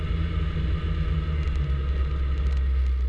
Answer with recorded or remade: recorded